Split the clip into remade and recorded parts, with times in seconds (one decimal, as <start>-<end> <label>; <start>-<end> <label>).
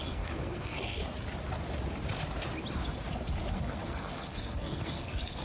0.0-1.0 remade; 1.0-3.5 recorded; 3.5-5.4 remade